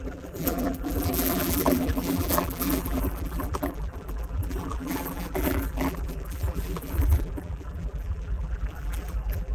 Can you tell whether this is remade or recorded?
remade